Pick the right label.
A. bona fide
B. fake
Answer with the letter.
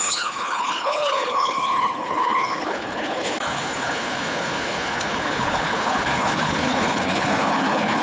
B